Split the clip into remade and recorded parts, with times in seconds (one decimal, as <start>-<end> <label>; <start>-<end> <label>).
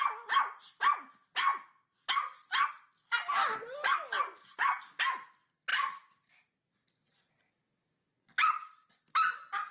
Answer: 0.0-5.7 recorded; 5.7-6.7 remade; 6.7-9.7 recorded